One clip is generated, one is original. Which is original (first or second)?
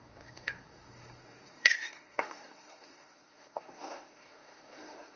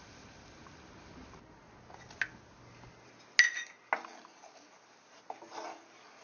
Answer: second